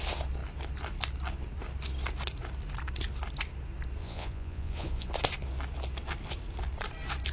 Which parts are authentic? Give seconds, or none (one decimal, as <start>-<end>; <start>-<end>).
0.0-4.0; 5.1-7.3

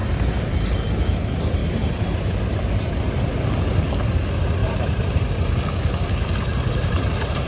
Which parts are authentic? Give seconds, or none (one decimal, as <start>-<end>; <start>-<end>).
0.5-4.6; 5.2-6.5